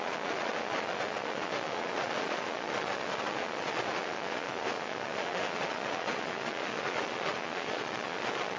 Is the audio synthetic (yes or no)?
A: yes